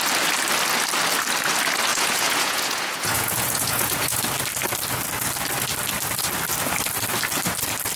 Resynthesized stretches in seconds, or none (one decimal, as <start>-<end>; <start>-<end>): 1.9-4.2